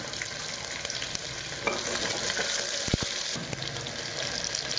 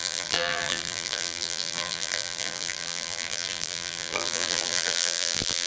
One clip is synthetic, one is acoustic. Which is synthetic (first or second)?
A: second